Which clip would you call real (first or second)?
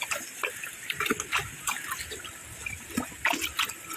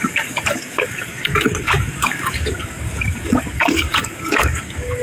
first